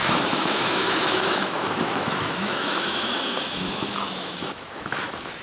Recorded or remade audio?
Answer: remade